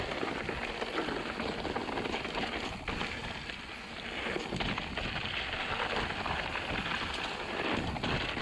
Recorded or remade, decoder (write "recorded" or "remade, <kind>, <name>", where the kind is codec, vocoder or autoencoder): recorded